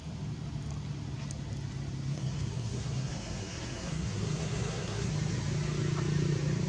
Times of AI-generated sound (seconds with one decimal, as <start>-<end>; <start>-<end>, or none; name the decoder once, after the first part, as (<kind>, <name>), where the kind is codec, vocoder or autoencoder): 2.1-5.1 (codec, SNAC)